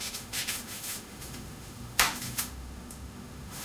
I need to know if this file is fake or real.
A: fake